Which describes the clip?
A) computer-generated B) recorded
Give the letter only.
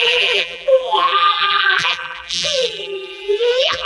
A